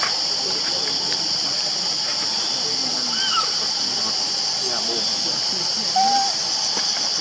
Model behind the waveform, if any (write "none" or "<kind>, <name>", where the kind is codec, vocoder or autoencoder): none